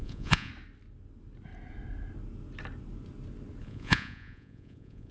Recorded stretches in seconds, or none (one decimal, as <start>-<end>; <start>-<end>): 0.5-3.6